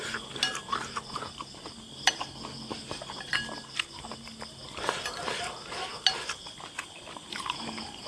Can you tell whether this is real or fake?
real